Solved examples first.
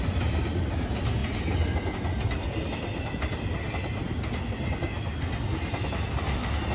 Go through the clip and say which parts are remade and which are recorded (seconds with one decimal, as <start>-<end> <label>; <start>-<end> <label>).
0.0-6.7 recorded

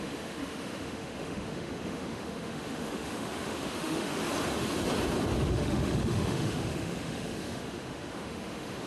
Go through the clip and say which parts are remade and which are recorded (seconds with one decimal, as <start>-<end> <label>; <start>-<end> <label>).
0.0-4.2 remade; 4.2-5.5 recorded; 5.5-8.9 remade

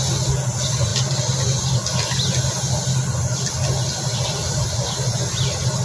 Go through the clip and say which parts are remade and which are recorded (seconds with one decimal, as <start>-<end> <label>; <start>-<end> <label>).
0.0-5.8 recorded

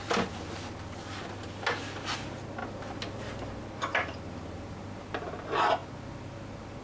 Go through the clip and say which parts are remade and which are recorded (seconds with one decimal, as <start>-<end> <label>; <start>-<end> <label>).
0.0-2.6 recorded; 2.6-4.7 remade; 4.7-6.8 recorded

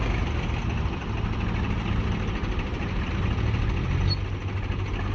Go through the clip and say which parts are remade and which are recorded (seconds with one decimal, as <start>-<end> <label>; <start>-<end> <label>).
0.0-5.1 recorded